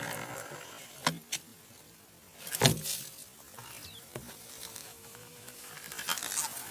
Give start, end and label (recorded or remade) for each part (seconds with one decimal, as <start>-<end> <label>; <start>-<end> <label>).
0.0-4.8 recorded; 4.8-5.7 remade; 5.7-6.7 recorded